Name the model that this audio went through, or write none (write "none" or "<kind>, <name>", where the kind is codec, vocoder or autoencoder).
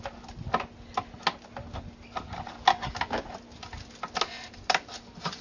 none